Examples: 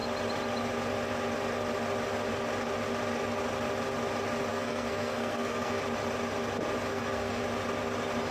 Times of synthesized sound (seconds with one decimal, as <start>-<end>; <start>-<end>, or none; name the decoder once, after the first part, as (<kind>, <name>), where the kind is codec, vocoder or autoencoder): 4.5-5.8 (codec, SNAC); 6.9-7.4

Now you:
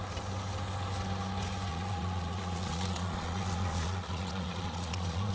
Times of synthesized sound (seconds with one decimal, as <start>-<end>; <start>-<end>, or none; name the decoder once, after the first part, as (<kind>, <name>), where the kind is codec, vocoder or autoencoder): 1.7-5.3 (vocoder, Vocos)

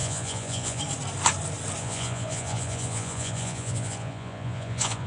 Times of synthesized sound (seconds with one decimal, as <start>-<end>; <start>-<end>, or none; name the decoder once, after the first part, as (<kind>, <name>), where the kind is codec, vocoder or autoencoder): 0.0-0.8 (vocoder, Vocos); 1.8-5.1

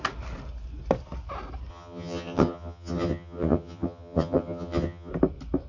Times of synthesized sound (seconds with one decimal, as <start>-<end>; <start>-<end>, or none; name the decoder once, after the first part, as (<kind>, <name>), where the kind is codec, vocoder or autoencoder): 1.7-5.1 (vocoder, HiFi-GAN)

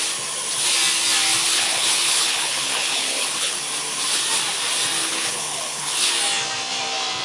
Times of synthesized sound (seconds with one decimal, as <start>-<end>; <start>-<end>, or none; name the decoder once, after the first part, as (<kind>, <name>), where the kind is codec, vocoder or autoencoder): 1.4-3.6 (codec, HILCodec); 5.0-6.1